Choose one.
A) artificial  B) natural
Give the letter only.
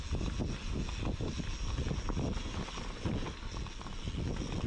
B